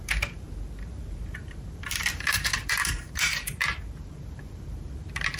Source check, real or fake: fake